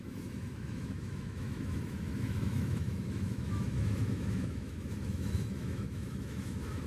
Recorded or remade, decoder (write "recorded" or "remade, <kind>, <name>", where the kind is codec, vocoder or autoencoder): remade, autoencoder, DAC-VAE